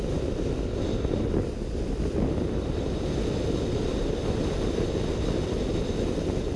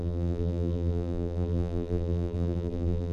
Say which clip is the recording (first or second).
first